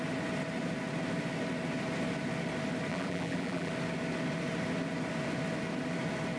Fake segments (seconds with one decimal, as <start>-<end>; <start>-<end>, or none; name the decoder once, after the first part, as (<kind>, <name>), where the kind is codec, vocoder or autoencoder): 2.9-3.7 (vocoder, BigVGAN v2)